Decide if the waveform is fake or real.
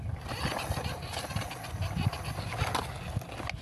real